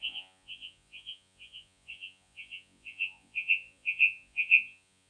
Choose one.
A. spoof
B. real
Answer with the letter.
A